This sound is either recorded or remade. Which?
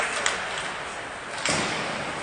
recorded